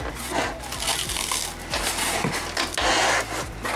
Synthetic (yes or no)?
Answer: no